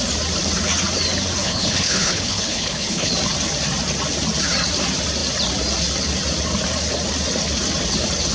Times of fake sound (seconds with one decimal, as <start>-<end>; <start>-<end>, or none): 1.4-3.1